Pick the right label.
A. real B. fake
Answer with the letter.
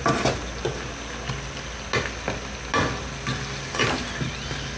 A